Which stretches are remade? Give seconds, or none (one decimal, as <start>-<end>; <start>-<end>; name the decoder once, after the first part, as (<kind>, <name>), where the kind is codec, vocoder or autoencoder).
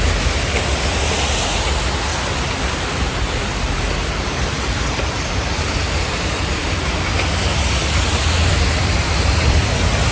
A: 2.1-6.9 (vocoder, BigVGAN v2); 8.5-9.6